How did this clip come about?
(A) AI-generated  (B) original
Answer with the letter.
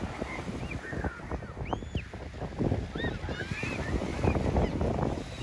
B